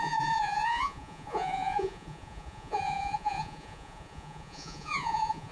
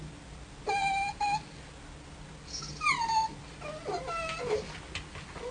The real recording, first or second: second